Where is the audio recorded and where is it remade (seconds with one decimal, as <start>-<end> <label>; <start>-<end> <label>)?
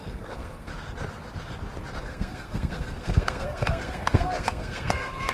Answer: 0.0-0.7 remade; 0.7-2.0 recorded; 2.0-5.3 remade